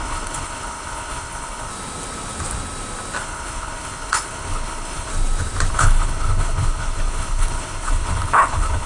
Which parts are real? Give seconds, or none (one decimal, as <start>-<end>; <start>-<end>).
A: 1.7-3.2; 5.1-5.7